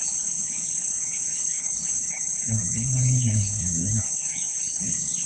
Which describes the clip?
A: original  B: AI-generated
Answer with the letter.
B